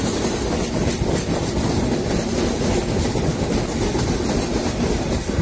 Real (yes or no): yes